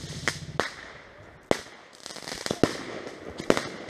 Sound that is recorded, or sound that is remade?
recorded